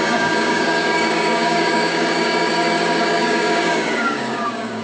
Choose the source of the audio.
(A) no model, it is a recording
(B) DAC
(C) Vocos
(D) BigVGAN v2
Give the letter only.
B